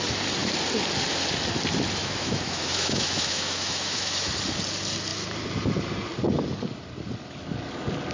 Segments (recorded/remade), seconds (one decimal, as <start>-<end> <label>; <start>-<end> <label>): 0.0-2.0 recorded; 2.0-4.3 remade; 4.3-8.1 recorded